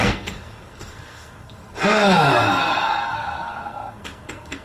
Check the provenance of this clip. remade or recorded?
remade